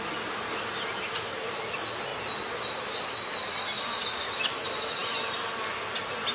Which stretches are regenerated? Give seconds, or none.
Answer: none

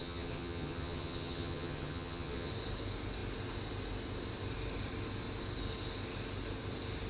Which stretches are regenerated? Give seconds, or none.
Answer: 0.0-2.5